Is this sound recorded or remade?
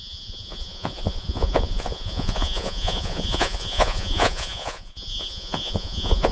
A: remade